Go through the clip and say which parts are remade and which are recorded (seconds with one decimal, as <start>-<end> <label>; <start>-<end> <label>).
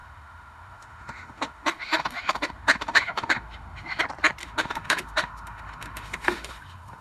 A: 0.0-4.0 remade; 4.0-4.4 recorded; 4.4-7.0 remade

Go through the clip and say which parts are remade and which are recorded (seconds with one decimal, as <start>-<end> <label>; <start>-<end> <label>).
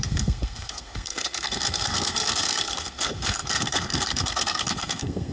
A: 0.0-5.3 remade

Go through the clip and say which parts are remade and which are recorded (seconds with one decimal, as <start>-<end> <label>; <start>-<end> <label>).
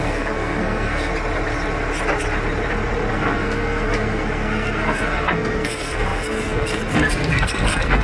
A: 0.0-1.1 remade; 1.1-3.1 recorded; 3.1-8.0 remade